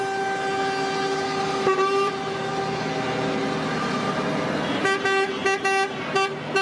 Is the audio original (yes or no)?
yes